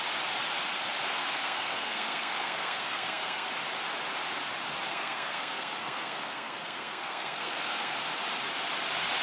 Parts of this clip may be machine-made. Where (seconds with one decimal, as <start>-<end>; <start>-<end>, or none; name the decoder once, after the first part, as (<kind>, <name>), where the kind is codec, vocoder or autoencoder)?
1.2-3.5 (codec, SNAC); 4.9-7.9